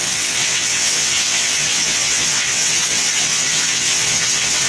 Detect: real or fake fake